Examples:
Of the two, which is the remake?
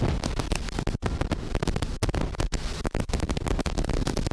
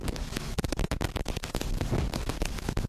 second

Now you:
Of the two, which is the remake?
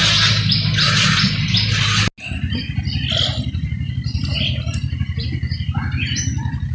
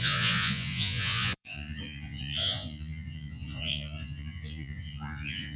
second